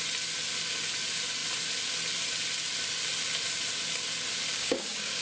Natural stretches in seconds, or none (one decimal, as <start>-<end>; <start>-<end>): 0.0-4.5